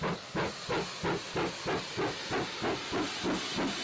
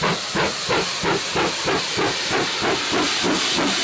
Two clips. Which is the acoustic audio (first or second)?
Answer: first